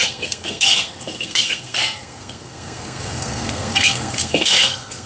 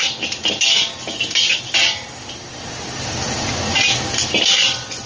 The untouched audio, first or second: second